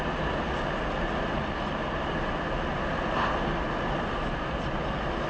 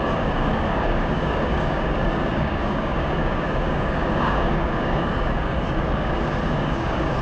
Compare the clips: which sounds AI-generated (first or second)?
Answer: second